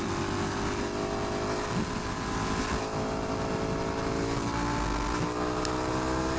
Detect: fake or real real